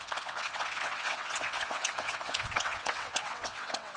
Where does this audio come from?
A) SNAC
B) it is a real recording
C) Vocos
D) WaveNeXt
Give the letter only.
D